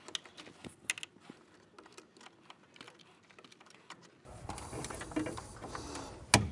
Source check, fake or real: real